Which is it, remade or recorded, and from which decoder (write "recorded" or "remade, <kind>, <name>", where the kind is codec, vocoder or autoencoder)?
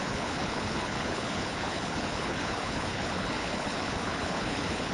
remade, codec, HILCodec